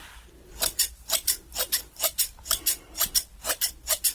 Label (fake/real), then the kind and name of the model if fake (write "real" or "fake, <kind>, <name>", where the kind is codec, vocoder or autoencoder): fake, vocoder, BigVGAN v2